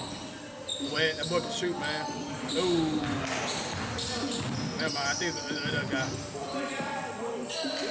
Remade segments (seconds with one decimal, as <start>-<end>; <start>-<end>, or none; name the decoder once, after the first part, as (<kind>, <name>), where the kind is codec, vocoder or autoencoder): none